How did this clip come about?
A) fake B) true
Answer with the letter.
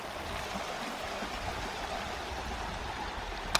B